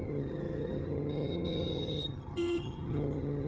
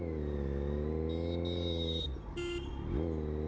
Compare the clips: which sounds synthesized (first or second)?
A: first